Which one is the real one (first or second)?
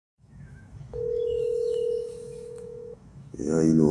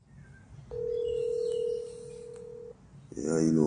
second